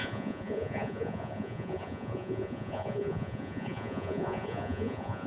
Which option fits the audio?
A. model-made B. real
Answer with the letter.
A